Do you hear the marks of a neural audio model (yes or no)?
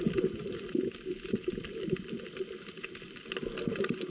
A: no